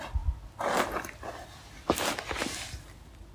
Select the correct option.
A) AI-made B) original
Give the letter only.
B